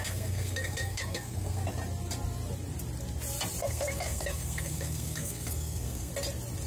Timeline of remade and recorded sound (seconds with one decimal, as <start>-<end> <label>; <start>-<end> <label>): 0.0-1.6 remade; 1.6-3.6 recorded; 3.6-6.1 remade; 6.1-6.7 recorded

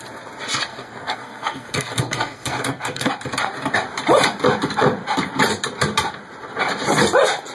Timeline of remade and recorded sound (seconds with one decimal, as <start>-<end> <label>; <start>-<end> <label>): 0.0-0.7 recorded; 0.7-3.1 remade; 3.1-7.5 recorded

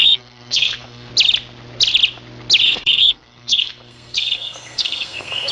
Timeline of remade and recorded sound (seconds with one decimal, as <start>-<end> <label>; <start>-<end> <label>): 0.0-1.1 remade; 1.1-2.6 recorded; 2.6-5.5 remade

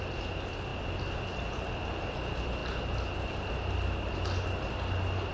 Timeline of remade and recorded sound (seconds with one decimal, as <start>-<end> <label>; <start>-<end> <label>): 0.0-5.3 recorded